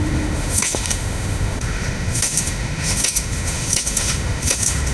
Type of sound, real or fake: fake